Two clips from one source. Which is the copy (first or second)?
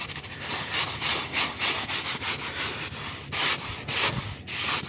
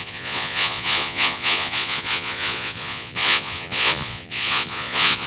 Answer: second